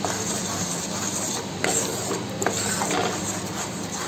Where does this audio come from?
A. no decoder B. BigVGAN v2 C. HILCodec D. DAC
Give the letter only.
A